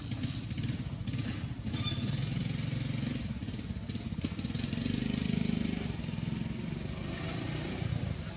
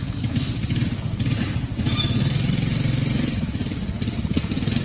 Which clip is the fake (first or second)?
second